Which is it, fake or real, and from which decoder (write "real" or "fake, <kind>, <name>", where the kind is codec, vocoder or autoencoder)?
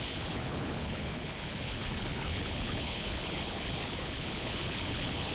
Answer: fake, codec, HILCodec